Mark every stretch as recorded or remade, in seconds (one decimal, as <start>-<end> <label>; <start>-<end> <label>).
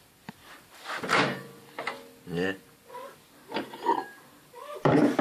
0.0-5.2 remade